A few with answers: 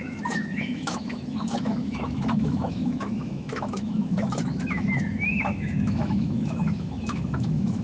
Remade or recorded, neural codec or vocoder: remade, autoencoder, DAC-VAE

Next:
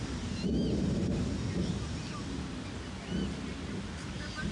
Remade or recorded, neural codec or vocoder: recorded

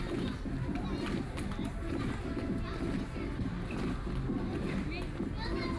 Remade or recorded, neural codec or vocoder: recorded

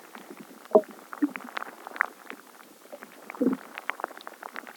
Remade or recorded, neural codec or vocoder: recorded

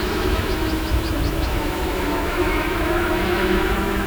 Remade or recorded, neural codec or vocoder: remade, autoencoder, DAC-VAE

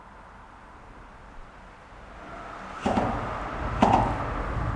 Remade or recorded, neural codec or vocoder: recorded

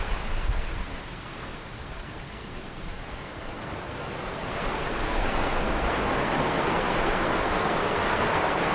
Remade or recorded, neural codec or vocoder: remade, codec, SNAC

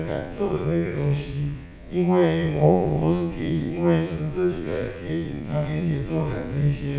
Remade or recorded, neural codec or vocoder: remade, vocoder, Vocos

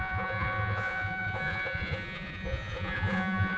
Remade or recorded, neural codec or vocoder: remade, vocoder, Vocos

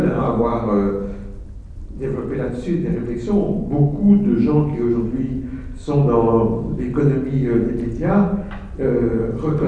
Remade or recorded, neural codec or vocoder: recorded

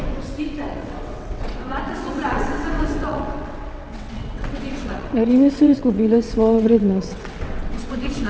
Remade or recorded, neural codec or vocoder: remade, vocoder, WaveNeXt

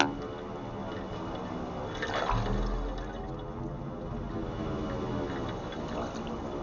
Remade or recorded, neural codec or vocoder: recorded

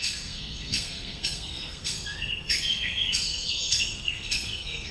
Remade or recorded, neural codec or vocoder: remade, codec, SNAC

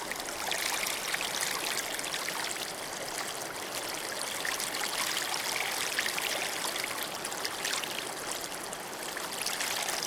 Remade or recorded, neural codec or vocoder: recorded